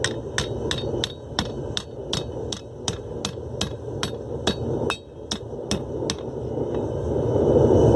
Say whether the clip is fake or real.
real